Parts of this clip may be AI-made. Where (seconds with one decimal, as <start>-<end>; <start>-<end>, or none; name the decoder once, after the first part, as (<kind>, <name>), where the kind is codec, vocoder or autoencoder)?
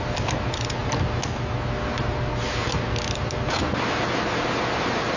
none